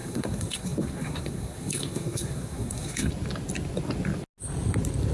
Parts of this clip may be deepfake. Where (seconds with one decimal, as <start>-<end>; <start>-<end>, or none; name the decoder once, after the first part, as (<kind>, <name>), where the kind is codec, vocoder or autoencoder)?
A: 0.0-3.1 (codec, SNAC)